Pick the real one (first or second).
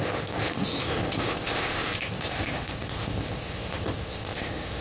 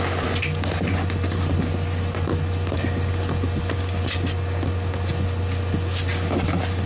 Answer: second